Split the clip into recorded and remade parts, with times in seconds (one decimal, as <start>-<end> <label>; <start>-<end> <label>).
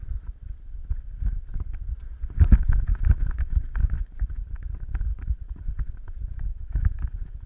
0.0-6.5 recorded; 6.5-7.0 remade; 7.0-7.5 recorded